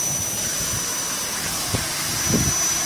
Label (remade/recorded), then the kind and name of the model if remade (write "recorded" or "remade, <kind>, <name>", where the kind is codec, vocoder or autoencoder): recorded